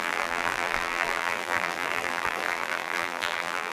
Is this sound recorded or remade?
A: remade